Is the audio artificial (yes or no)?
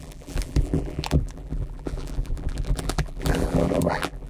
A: yes